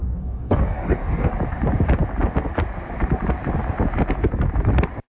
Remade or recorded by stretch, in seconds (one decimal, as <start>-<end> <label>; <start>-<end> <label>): 0.0-1.3 remade; 1.3-5.1 recorded